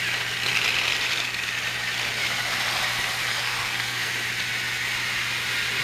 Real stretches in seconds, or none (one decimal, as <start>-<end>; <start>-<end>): 0.0-3.3; 4.1-5.8